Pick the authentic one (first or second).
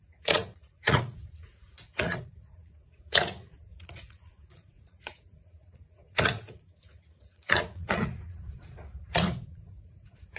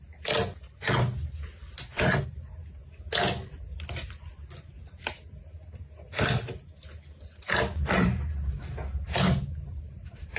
second